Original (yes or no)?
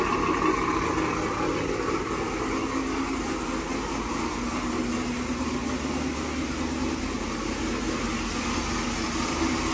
yes